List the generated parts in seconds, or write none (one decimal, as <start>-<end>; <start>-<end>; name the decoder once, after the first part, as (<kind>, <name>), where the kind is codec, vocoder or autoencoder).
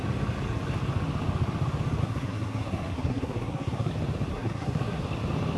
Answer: 2.0-3.9 (codec, SNAC); 4.3-5.0